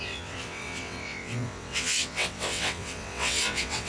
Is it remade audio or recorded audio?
remade